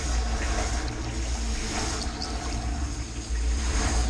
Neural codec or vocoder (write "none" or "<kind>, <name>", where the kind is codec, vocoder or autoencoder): none